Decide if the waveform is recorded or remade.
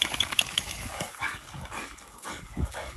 remade